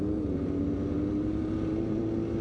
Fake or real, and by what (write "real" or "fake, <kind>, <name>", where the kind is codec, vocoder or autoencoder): real